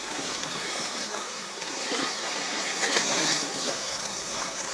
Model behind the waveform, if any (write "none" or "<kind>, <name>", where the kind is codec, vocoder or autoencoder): codec, SNAC